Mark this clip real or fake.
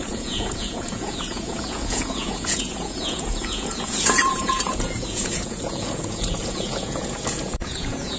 fake